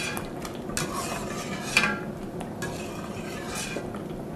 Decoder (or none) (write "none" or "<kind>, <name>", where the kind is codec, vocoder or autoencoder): none